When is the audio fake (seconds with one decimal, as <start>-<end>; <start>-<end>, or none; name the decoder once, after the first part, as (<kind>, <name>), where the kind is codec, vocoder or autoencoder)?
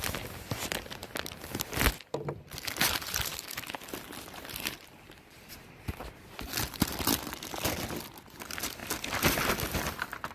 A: none